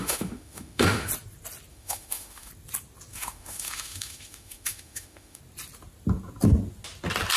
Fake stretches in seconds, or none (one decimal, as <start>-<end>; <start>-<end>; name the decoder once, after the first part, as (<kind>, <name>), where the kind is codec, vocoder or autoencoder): 0.0-1.1 (autoencoder, DAC-VAE); 1.7-2.5; 3.1-5.4